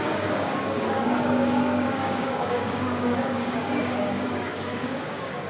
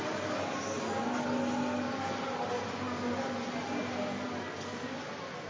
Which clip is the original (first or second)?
second